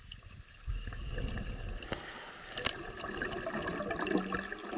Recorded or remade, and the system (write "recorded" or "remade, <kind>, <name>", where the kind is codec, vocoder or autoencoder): recorded